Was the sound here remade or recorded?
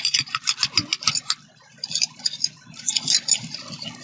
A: recorded